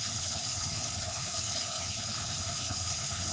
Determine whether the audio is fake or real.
fake